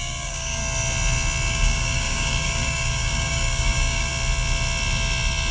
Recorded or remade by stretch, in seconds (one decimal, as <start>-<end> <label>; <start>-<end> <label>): 0.0-0.6 remade; 0.6-1.5 recorded; 1.5-4.1 remade; 4.1-5.5 recorded